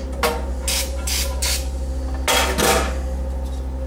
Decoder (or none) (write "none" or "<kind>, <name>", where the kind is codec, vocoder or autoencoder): none